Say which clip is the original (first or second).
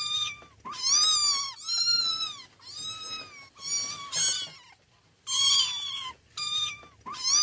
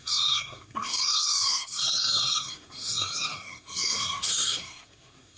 first